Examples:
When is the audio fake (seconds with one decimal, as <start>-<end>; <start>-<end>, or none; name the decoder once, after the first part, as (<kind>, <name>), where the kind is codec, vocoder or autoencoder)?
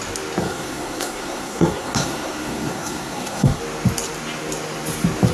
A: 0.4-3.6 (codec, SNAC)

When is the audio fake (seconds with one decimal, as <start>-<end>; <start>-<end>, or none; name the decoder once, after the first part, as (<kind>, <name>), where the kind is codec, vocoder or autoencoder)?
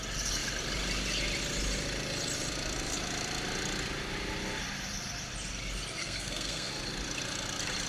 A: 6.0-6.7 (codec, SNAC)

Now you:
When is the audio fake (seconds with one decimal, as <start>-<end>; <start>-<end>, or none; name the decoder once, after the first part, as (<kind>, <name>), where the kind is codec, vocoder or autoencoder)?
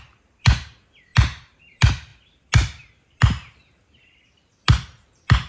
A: none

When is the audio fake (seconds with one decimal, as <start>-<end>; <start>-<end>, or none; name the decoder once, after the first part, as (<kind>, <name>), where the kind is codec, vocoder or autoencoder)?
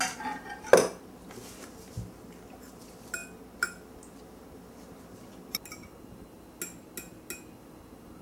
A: none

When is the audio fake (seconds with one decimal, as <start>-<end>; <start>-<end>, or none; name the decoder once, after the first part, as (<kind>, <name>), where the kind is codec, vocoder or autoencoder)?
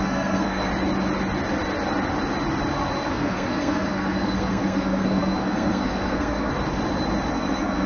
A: 0.0-0.7 (codec, SNAC); 3.1-6.5; 7.3-7.9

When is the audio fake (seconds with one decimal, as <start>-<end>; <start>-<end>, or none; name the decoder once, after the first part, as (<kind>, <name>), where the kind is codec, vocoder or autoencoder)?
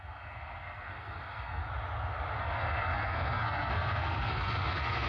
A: 0.0-1.6 (codec, SNAC); 2.4-5.1